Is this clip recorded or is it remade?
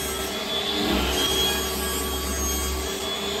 recorded